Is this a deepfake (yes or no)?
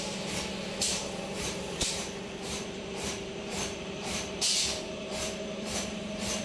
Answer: yes